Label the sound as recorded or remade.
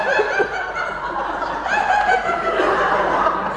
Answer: remade